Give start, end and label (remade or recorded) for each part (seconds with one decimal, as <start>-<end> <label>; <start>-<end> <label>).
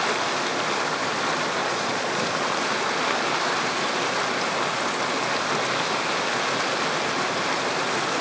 0.0-1.6 recorded; 1.6-2.2 remade; 2.2-8.2 recorded